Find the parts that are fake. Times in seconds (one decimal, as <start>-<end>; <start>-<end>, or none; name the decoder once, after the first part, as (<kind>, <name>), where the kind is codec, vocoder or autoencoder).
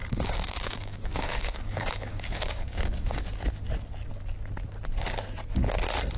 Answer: 0.0-3.2 (codec, DAC)